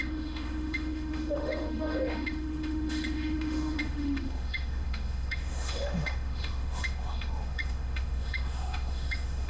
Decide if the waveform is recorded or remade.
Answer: remade